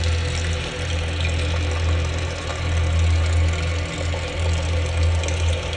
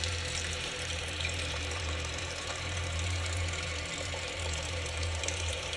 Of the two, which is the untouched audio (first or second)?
first